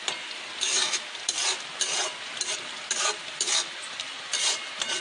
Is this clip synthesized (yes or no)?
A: yes